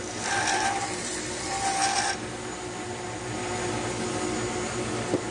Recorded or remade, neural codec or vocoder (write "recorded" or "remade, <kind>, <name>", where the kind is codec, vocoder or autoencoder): recorded